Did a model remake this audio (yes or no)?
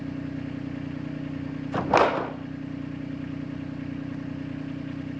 no